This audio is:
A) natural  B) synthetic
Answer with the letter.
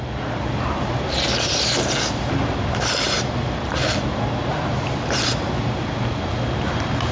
B